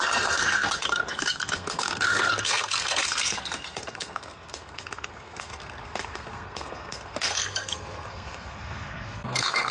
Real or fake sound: fake